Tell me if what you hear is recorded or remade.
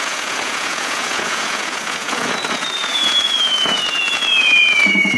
remade